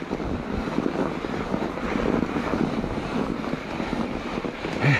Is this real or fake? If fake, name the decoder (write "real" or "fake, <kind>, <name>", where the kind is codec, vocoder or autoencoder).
real